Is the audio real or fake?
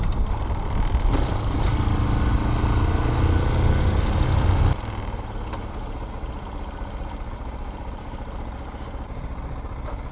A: real